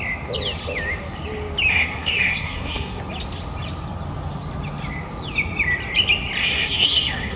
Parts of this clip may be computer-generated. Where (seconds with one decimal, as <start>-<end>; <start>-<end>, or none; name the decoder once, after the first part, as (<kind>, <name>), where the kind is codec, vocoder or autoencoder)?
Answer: 1.7-3.0 (codec, SNAC); 6.4-7.4